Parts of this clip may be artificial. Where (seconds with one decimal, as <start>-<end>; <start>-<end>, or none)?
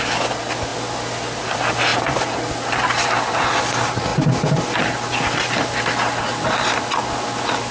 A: none